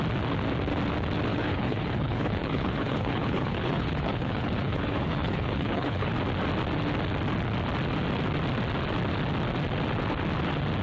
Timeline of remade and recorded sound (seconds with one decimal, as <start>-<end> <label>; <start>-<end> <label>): 0.0-1.3 recorded; 1.3-6.1 remade; 6.1-10.8 recorded